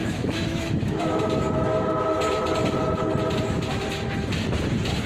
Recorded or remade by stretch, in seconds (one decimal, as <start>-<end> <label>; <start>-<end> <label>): 0.0-1.2 remade; 1.2-5.1 recorded

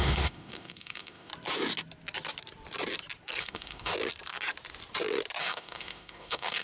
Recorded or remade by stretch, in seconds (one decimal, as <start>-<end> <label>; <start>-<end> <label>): 0.0-1.3 remade; 1.3-3.4 recorded; 3.4-3.9 remade; 3.9-5.4 recorded; 5.4-6.6 remade

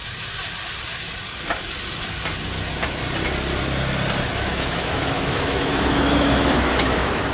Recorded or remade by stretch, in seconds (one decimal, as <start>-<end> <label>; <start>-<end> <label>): 0.0-4.3 recorded; 4.3-7.3 remade

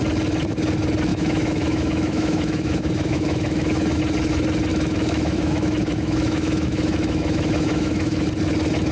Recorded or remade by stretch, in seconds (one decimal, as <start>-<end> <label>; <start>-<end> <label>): 0.0-1.1 recorded; 1.1-4.0 remade; 4.0-4.7 recorded; 4.7-8.3 remade; 8.3-8.9 recorded

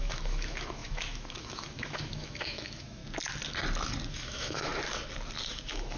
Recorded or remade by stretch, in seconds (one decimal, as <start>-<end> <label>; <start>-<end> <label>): 0.0-3.0 remade; 3.0-4.1 recorded; 4.1-4.7 remade; 4.7-5.5 recorded; 5.5-6.0 remade

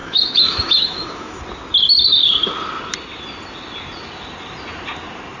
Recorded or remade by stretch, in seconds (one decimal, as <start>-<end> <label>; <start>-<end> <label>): 0.0-1.4 remade; 1.4-5.4 recorded

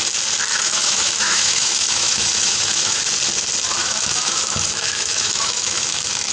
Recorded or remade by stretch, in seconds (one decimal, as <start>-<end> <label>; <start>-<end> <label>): 0.0-0.5 recorded; 0.5-3.0 remade; 3.0-3.8 recorded; 3.8-6.3 remade

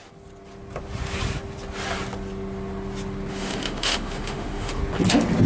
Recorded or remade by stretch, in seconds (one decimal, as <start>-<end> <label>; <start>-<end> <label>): 0.0-3.3 recorded; 3.3-4.8 remade; 4.8-5.5 recorded